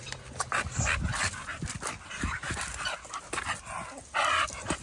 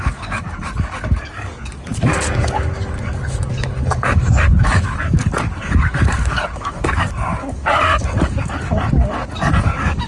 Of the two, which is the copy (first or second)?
second